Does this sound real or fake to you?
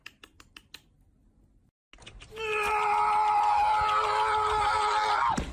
real